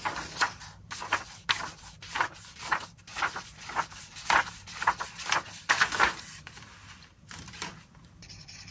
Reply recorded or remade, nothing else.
remade